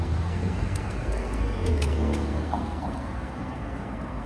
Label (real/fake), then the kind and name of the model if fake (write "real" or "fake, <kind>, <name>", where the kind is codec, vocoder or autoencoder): fake, codec, SNAC